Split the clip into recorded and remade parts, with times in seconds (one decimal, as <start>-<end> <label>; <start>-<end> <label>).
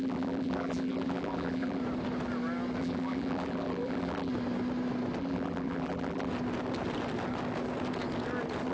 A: 0.0-1.8 remade; 1.8-2.8 recorded; 2.8-4.3 remade; 4.3-5.2 recorded; 5.2-6.3 remade; 6.3-8.7 recorded